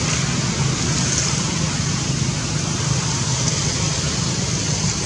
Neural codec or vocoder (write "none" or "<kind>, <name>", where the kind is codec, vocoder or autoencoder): none